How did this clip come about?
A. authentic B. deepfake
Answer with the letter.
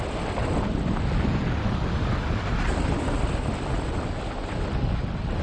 A